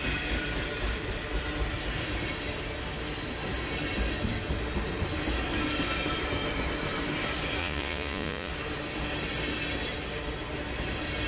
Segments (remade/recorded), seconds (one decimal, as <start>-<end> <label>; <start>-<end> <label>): 0.0-7.6 recorded; 7.6-8.5 remade; 8.5-11.3 recorded